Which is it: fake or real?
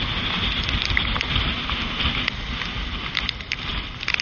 real